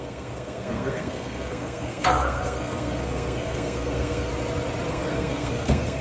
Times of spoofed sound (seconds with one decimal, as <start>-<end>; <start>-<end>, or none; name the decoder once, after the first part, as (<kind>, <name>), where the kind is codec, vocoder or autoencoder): 0.0-4.3 (codec, SNAC); 4.9-6.0